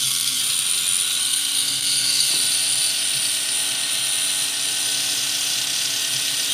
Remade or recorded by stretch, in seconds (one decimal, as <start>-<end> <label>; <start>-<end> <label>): 0.0-0.4 remade; 0.4-1.2 recorded; 1.2-2.3 remade; 2.3-6.5 recorded